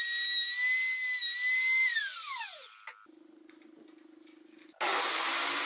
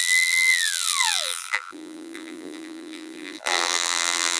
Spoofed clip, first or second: second